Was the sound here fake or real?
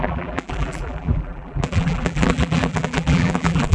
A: fake